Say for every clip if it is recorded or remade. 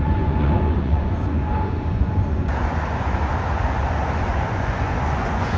remade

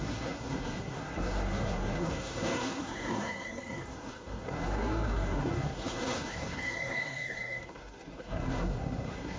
remade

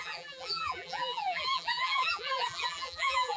remade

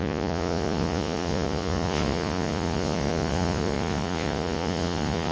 remade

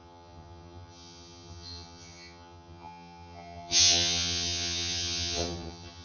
remade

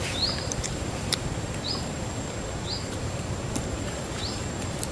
remade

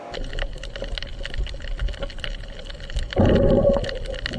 recorded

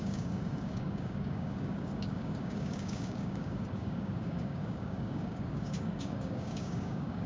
remade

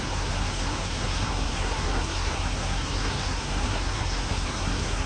remade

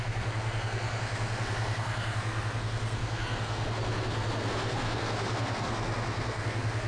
remade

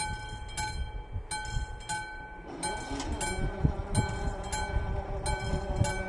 recorded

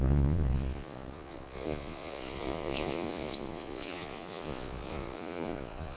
remade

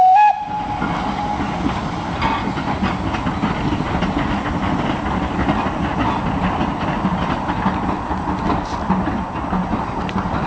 recorded